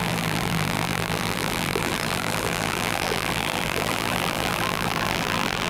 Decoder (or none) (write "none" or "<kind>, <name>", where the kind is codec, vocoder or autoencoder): vocoder, BigVGAN v2